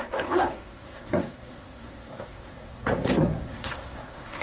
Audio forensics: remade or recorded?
remade